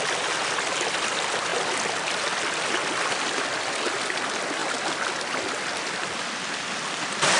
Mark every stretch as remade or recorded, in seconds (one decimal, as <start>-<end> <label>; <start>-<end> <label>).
0.0-7.4 recorded